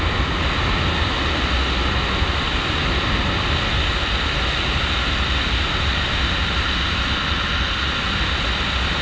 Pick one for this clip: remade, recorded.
recorded